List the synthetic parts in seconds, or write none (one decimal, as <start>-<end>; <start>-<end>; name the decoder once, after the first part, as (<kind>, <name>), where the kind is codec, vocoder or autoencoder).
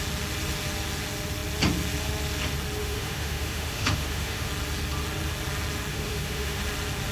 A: 2.8-4.5 (autoencoder, DAC-VAE); 5.9-6.6